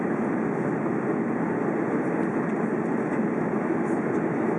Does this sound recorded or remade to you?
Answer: recorded